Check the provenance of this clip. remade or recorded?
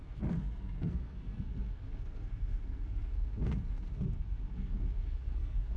remade